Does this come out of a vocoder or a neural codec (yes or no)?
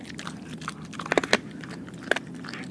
no